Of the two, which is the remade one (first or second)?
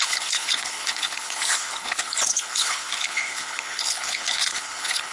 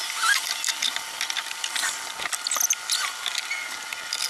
first